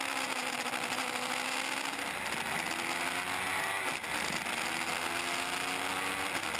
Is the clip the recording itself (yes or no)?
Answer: yes